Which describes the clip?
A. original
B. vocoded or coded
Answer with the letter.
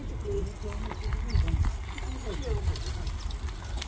A